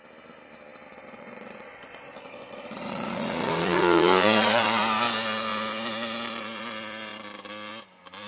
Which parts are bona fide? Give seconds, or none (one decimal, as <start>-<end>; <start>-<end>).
0.0-0.9; 4.8-8.3